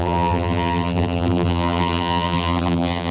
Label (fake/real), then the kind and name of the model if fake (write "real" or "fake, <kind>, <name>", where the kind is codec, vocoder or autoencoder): fake, vocoder, BigVGAN v2